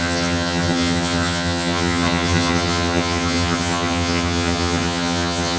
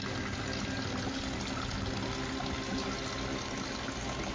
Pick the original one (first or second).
second